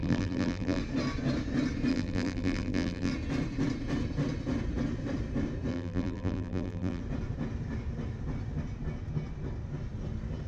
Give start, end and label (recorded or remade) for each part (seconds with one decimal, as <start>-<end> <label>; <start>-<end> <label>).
0.0-0.8 remade; 0.8-1.9 recorded; 1.9-3.1 remade; 3.1-5.7 recorded; 5.7-7.0 remade; 7.0-10.5 recorded